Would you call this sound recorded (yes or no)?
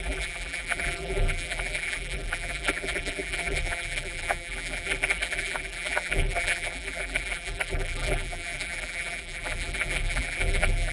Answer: no